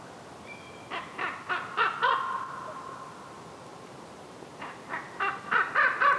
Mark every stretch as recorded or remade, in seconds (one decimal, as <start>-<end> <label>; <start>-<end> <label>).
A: 0.0-3.7 recorded; 3.7-5.1 remade; 5.1-6.2 recorded